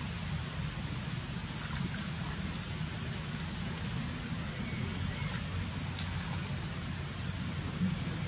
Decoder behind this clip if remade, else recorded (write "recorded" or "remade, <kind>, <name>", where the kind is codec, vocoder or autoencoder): recorded